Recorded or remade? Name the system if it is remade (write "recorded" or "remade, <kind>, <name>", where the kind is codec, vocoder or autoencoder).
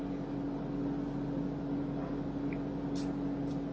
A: recorded